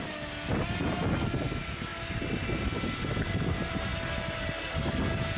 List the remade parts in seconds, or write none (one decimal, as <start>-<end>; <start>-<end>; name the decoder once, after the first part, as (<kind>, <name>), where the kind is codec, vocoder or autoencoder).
none